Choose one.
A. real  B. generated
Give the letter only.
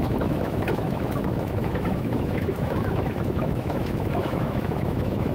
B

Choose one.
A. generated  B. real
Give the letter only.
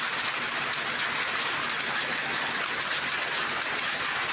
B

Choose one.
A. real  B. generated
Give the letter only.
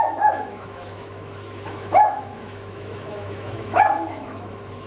B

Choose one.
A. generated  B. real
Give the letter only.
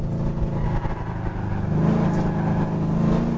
B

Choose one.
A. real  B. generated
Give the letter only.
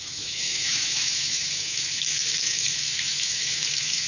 B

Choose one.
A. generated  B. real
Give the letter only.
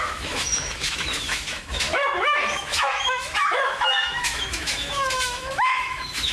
A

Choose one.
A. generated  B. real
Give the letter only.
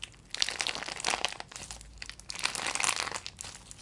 B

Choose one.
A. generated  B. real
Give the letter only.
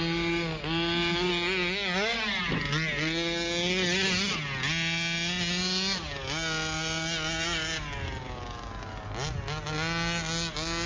B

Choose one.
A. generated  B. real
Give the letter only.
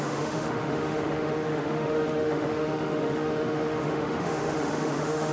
A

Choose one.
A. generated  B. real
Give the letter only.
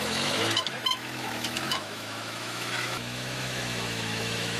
A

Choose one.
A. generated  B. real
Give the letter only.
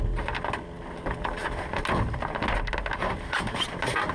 B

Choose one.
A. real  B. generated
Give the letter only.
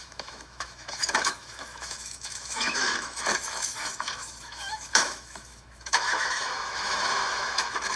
B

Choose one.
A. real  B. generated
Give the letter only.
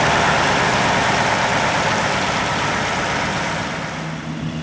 A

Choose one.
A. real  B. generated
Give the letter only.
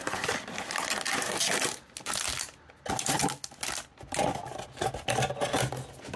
A